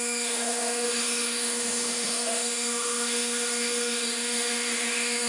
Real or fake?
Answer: fake